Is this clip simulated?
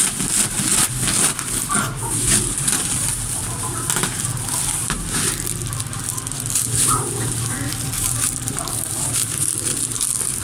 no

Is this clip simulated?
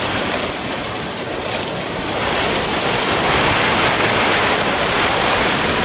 yes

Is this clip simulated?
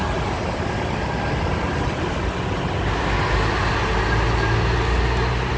no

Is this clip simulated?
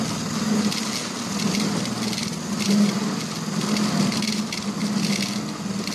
no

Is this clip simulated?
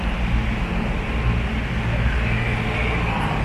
no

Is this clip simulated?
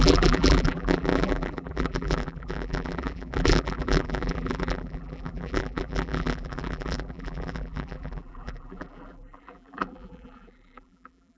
yes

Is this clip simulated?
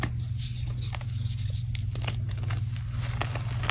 no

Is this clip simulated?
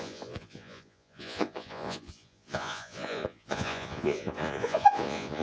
yes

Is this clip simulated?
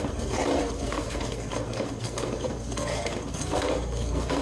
yes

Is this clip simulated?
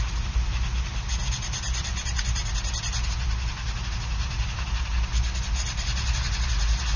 no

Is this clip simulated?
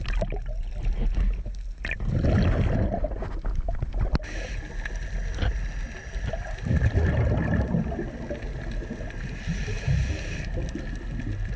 no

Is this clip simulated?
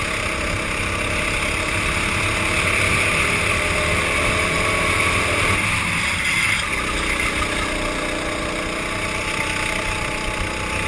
no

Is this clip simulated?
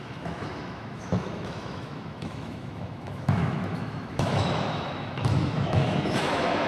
yes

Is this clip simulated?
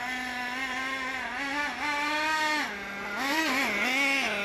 no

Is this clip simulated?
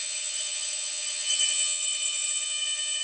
yes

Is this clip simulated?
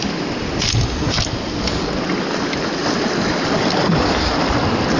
no